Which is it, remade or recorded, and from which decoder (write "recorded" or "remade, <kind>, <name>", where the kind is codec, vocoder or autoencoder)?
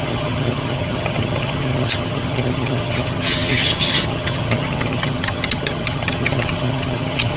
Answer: remade, vocoder, HiFi-GAN